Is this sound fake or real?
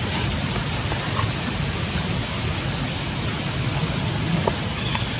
fake